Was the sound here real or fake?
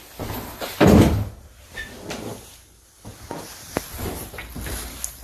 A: real